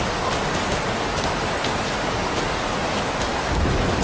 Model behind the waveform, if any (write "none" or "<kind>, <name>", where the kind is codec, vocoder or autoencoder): none